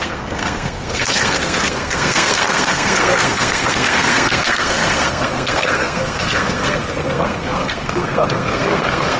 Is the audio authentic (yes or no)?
no